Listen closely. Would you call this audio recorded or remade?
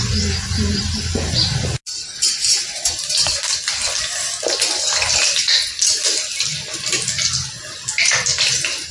recorded